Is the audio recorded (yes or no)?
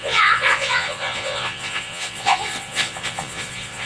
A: no